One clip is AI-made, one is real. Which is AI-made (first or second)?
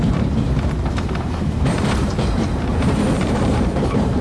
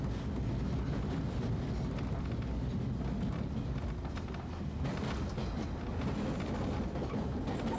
first